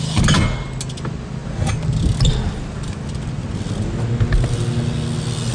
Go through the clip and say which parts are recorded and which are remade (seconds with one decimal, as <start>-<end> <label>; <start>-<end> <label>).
0.0-5.5 recorded